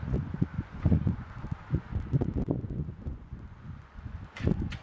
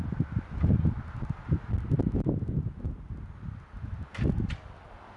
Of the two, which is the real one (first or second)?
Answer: second